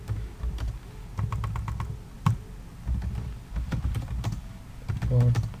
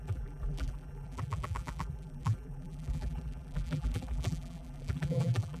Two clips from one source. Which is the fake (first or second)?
second